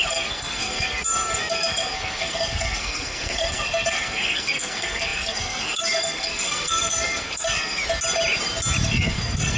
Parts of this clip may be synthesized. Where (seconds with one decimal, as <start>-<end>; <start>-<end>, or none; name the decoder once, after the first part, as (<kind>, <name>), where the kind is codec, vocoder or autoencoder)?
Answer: 0.0-7.8 (codec, SNAC); 8.9-9.6